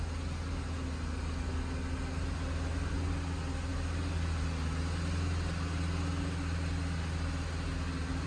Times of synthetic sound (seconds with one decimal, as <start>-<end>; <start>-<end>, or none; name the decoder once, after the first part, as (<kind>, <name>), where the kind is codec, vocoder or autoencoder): none